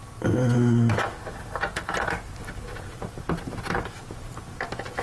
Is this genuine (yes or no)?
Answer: yes